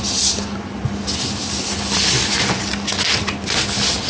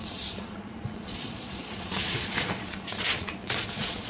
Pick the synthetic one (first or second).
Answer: second